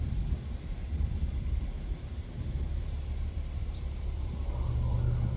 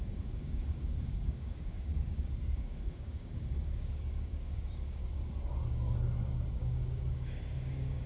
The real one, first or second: first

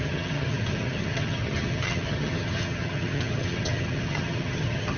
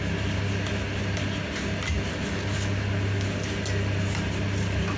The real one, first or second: second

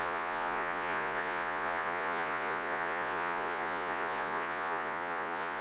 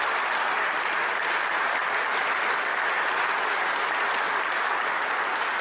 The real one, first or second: second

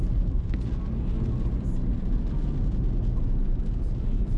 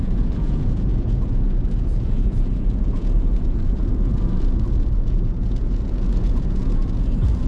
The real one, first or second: first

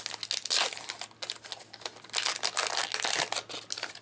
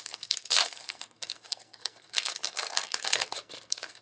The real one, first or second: first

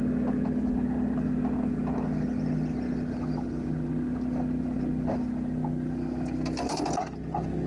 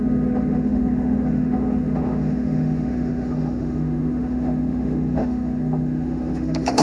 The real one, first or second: first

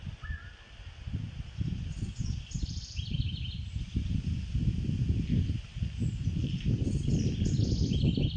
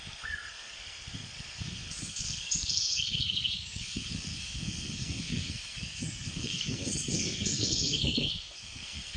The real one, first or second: first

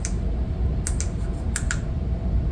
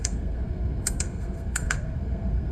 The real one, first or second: first